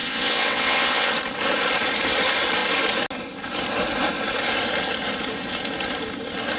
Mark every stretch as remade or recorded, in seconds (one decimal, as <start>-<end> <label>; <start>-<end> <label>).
0.0-1.1 remade; 1.1-6.6 recorded